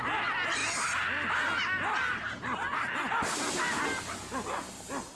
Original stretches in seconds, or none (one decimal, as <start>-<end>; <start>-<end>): 0.0-5.2

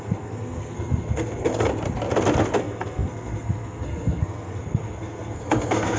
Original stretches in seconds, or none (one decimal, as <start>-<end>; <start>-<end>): 1.7-2.6

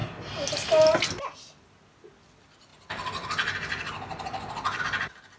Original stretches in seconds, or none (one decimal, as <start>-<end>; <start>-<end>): 0.0-5.4